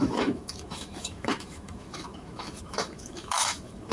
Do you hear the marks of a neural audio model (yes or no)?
yes